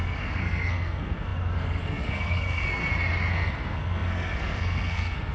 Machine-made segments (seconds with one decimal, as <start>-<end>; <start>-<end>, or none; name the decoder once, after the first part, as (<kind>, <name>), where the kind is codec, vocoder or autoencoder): 0.0-2.8 (codec, SNAC); 3.3-5.3